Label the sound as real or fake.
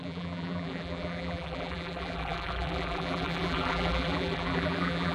fake